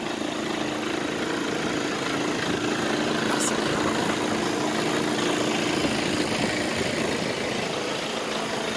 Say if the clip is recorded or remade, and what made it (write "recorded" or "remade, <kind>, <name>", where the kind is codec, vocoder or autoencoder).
recorded